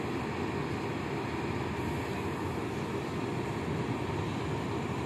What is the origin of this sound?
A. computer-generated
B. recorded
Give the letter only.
B